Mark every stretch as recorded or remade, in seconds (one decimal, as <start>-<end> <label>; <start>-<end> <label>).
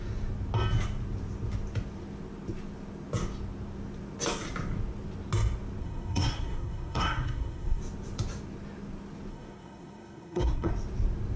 0.0-5.8 recorded; 5.8-7.8 remade; 7.8-9.3 recorded; 9.3-10.7 remade; 10.7-11.4 recorded